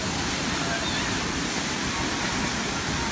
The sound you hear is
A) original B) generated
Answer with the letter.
A